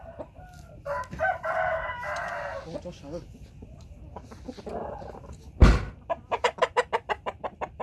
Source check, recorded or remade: recorded